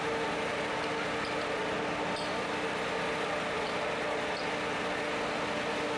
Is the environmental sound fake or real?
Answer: real